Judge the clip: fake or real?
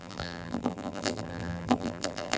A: fake